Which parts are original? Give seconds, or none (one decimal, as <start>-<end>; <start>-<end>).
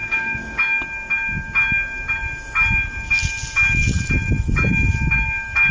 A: 0.6-5.7